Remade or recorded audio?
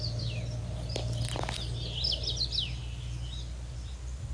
recorded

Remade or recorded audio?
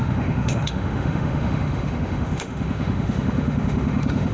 remade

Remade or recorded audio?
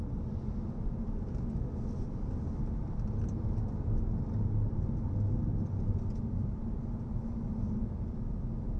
recorded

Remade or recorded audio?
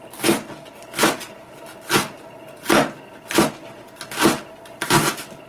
recorded